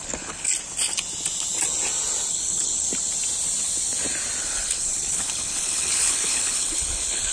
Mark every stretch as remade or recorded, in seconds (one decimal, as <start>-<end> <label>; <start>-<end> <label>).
0.0-0.5 remade; 0.5-2.3 recorded; 2.3-2.9 remade; 2.9-4.4 recorded; 4.4-7.3 remade